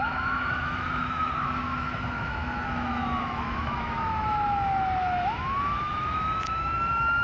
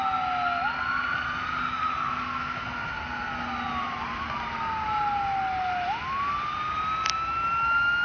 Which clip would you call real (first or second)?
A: second